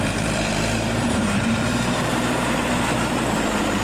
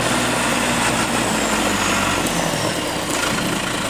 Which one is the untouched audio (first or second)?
second